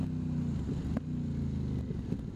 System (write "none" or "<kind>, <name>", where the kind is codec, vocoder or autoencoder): none